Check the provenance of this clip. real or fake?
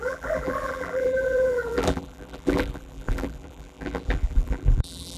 fake